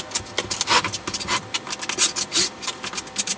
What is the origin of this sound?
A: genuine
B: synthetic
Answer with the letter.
A